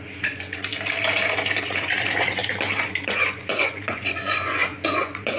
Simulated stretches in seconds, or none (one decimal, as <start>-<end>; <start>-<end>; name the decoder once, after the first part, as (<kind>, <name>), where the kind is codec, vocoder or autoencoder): 0.0-0.7 (vocoder, Vocos); 1.6-2.4; 2.9-5.4